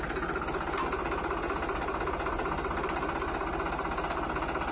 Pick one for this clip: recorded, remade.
recorded